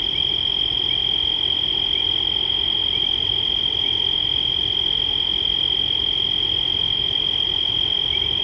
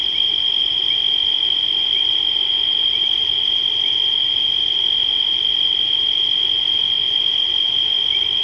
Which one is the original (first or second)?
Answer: first